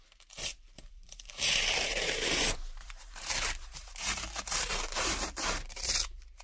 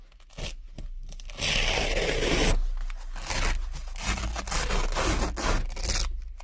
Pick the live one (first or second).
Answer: second